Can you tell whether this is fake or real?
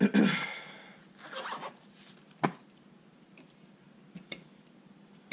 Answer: real